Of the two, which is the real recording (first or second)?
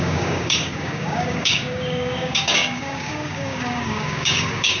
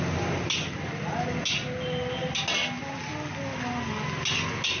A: second